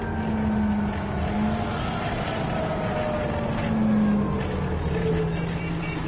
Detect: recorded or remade recorded